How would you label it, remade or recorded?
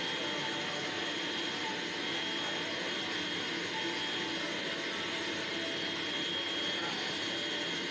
recorded